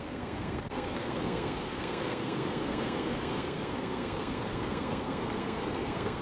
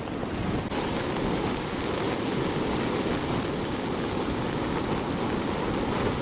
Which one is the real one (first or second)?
second